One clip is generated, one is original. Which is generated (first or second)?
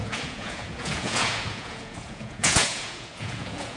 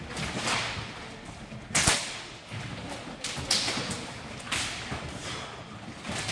first